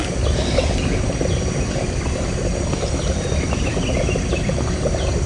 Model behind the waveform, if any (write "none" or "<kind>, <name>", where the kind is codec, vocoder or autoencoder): none